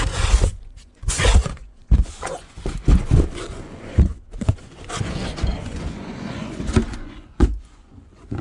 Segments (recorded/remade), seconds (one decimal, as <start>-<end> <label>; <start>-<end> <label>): 0.0-8.4 remade